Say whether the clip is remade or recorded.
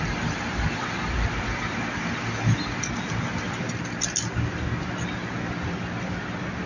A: recorded